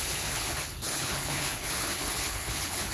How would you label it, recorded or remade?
remade